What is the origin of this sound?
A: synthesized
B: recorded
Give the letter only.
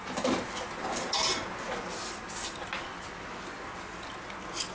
B